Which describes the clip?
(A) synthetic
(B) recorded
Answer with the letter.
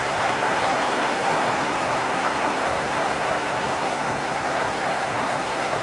A